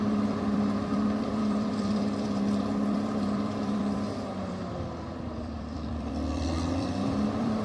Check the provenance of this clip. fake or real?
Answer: fake